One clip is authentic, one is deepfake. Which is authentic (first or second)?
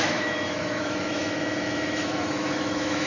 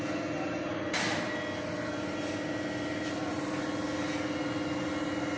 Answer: second